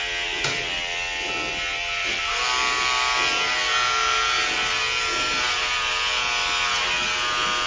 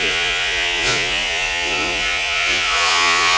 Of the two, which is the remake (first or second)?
second